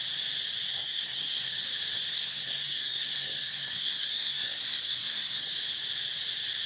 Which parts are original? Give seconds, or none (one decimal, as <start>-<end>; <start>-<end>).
0.0-0.7; 1.5-2.1; 5.5-6.7